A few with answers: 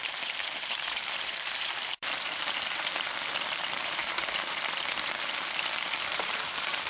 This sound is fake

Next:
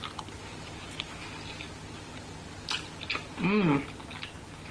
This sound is real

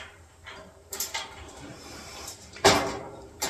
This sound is fake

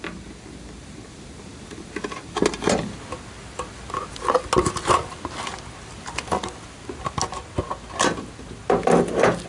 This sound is real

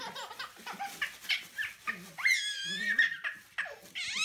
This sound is real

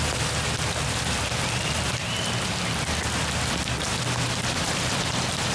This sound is real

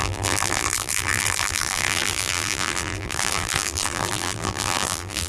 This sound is fake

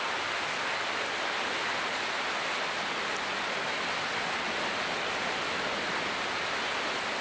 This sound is real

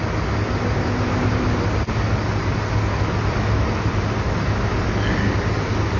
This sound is real